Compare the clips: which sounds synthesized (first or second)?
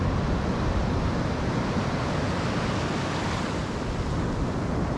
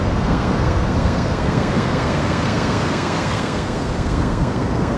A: second